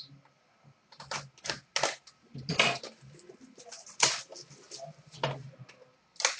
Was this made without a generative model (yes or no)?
yes